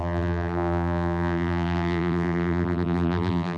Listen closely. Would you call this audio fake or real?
fake